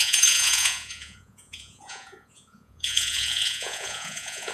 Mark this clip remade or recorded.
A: remade